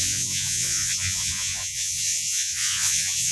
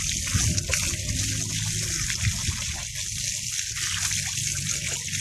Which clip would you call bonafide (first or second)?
second